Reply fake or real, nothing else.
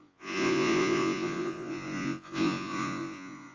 fake